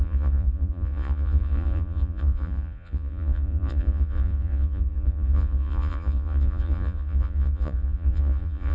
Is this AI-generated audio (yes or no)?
yes